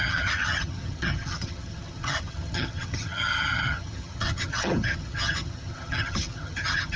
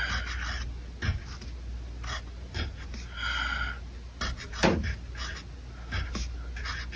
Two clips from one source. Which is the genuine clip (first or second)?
second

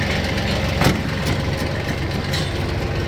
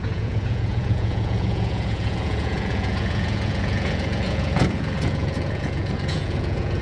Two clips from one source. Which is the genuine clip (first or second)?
first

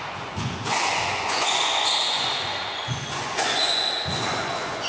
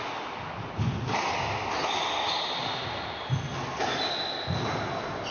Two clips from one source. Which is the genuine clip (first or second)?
second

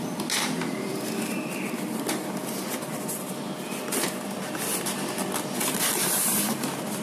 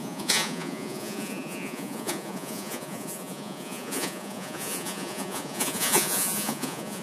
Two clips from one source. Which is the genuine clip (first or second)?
first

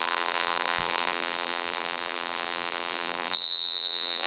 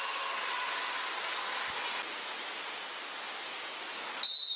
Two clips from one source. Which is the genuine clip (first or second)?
second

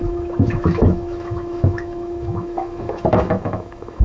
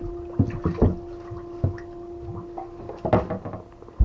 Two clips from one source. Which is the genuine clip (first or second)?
second